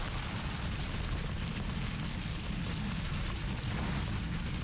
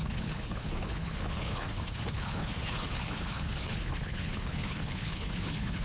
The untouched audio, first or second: first